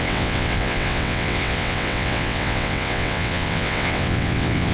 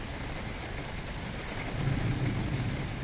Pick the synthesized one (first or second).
first